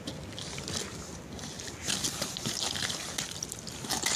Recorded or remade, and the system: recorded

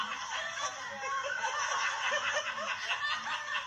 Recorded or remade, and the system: recorded